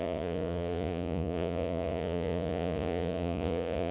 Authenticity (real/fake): fake